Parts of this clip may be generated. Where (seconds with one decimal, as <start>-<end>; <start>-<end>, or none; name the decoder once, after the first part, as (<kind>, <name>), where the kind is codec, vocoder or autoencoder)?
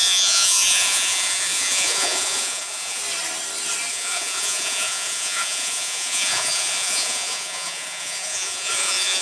0.0-3.0 (vocoder, Vocos); 3.9-9.2